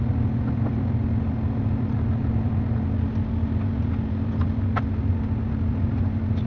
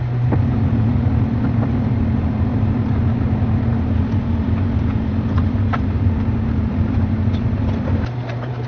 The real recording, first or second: first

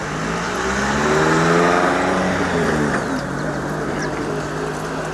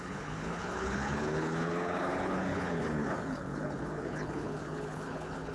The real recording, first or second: first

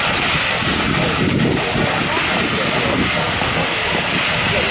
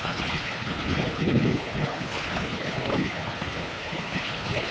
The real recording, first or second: first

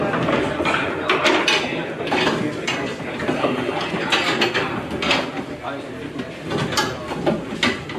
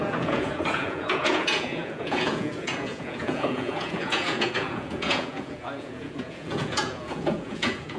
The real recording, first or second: first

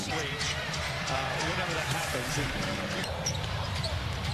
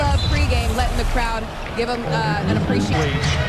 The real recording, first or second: second